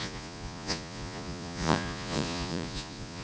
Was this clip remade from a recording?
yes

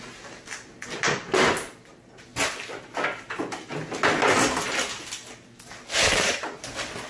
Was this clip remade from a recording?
no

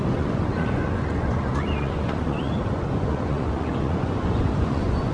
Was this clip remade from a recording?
yes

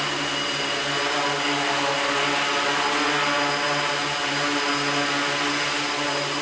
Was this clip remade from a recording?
no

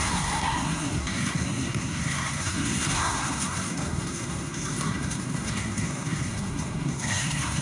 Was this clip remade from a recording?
yes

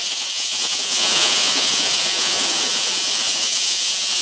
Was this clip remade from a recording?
yes